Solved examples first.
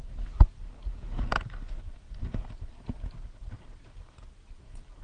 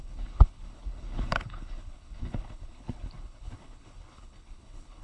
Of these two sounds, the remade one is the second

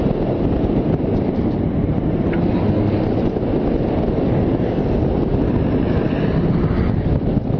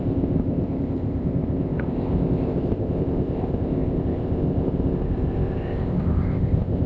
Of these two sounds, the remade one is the second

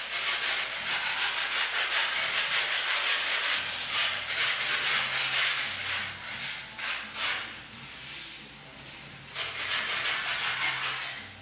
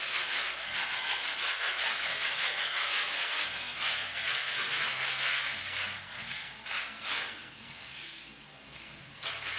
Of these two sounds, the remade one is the second